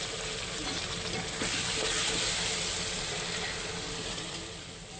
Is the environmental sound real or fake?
real